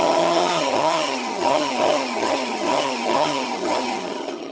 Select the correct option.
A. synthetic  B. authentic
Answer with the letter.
A